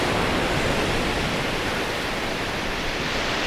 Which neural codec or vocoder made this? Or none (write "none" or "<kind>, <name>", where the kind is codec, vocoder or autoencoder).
none